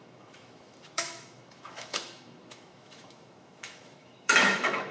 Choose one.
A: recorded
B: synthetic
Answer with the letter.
B